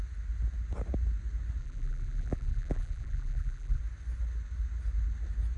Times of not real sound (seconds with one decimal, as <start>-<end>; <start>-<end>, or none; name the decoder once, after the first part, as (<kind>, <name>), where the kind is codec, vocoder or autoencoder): 1.6-3.8 (vocoder, BigVGAN v2)